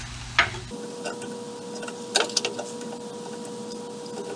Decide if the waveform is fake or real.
real